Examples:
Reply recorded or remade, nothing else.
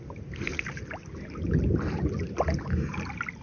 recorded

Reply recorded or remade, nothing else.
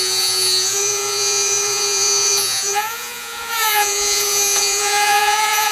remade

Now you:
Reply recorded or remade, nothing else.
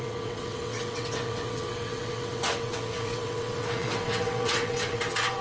remade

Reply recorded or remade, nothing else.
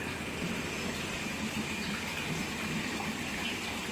remade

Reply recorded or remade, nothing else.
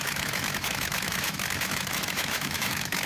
remade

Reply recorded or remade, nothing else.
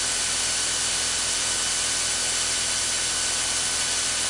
recorded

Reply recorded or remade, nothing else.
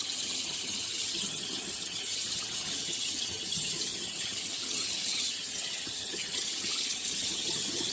remade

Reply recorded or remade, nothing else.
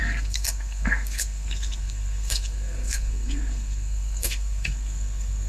remade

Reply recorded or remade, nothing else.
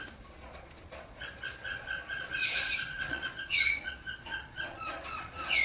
remade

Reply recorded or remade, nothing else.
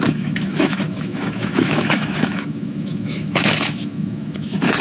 remade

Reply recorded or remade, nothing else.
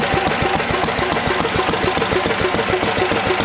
recorded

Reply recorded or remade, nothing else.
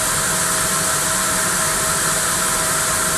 recorded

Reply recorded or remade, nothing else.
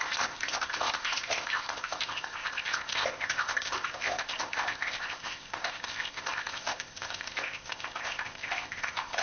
remade